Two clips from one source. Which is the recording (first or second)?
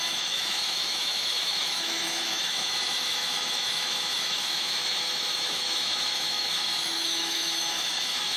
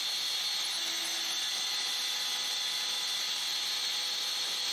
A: second